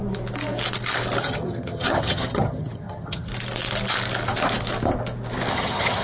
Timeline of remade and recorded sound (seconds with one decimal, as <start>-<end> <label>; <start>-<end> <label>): 0.0-1.2 recorded; 1.2-3.3 remade; 3.3-5.5 recorded; 5.5-6.0 remade

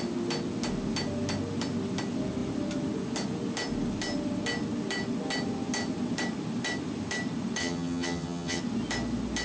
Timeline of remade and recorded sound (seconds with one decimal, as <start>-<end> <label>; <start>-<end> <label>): 0.0-7.6 recorded; 7.6-8.6 remade; 8.6-9.4 recorded

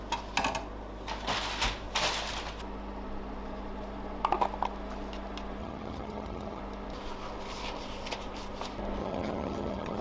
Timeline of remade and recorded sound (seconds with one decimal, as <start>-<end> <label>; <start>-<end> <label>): 0.0-5.6 recorded; 5.6-6.6 remade; 6.6-9.0 recorded; 9.0-10.0 remade

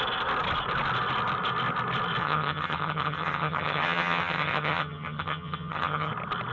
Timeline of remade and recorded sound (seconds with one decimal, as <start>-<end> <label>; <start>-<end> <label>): 0.0-2.2 recorded; 2.2-6.1 remade; 6.1-6.5 recorded

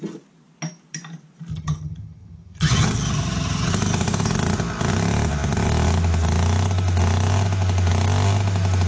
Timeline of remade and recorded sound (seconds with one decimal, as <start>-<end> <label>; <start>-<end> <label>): 0.0-1.5 recorded; 1.5-3.7 remade; 3.7-8.9 recorded

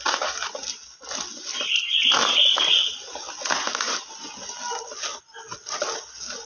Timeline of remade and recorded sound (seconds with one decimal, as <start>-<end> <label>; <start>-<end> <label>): 0.0-6.5 recorded

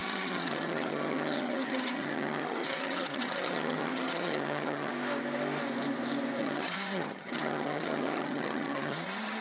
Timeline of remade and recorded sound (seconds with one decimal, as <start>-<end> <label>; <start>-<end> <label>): 0.0-4.9 remade; 4.9-6.4 recorded; 6.4-9.4 remade